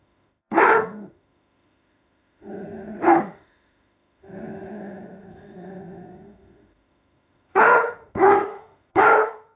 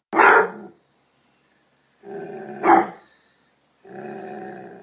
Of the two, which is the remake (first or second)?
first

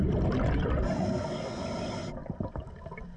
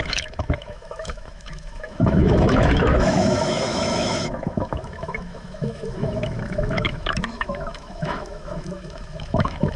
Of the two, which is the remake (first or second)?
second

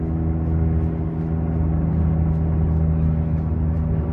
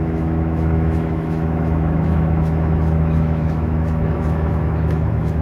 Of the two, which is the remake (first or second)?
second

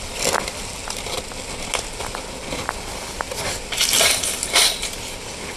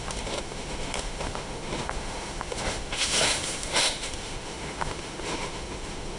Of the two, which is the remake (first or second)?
second